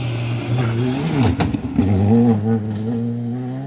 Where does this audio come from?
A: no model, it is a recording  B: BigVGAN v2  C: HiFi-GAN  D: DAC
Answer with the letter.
A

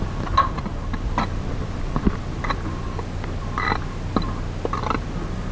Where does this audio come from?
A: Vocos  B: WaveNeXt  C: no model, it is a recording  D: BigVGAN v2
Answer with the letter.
C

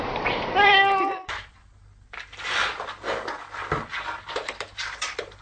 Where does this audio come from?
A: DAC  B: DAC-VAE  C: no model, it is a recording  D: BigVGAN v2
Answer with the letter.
D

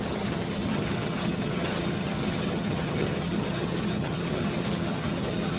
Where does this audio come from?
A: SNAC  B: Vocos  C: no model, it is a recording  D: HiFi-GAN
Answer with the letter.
D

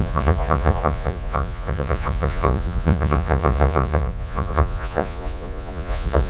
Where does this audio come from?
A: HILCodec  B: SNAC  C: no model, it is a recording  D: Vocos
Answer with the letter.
D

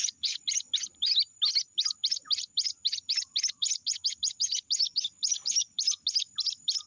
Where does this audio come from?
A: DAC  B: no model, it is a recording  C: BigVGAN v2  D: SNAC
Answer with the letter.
B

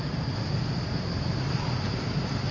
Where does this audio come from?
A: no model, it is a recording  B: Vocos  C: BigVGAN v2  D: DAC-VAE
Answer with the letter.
A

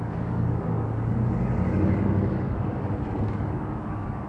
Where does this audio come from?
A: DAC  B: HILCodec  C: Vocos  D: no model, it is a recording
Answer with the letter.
A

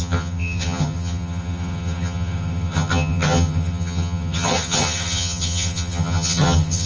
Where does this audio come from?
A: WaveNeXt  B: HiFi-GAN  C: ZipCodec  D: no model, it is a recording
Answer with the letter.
B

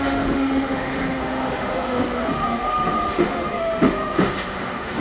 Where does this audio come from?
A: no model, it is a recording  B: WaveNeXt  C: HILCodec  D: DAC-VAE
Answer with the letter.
D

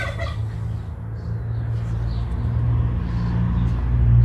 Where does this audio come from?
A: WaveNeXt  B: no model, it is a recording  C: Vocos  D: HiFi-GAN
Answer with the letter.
B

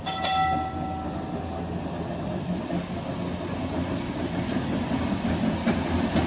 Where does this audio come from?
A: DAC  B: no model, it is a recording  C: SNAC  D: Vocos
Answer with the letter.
B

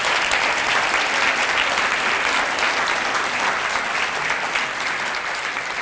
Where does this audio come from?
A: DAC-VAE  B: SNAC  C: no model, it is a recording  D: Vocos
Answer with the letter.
C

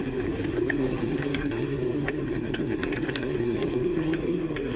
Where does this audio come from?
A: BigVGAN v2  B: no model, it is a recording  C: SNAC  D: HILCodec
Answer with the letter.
C